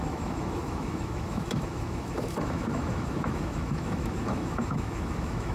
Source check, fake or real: fake